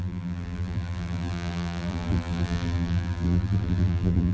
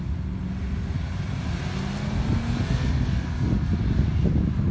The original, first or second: second